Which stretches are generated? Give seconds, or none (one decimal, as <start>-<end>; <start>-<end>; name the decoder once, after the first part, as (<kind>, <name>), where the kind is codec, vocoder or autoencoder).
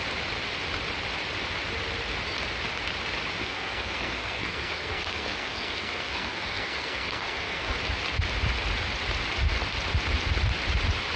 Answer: 3.4-7.8 (codec, SNAC)